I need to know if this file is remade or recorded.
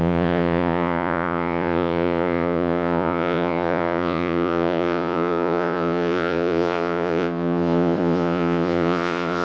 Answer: remade